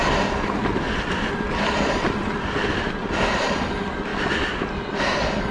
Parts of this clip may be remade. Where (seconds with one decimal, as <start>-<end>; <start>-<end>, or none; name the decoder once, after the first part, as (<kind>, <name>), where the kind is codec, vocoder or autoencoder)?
none